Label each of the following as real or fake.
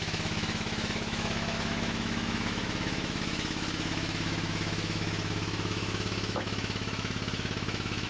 fake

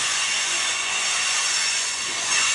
fake